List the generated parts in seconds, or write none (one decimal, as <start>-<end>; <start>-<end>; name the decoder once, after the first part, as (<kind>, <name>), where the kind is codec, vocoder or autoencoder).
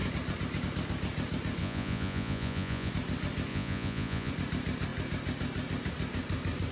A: 1.6-2.9 (vocoder, Vocos); 3.5-4.3